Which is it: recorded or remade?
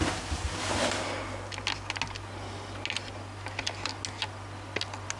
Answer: recorded